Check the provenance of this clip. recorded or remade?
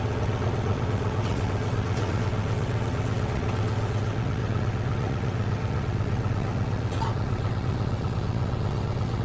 remade